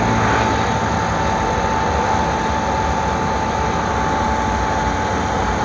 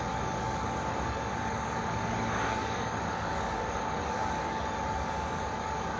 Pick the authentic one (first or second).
first